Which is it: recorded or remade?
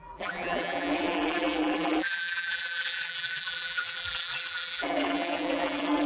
remade